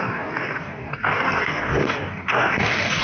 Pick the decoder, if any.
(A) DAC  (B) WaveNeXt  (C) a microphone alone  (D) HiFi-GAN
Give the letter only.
A